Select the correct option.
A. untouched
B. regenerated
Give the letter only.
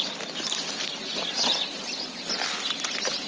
A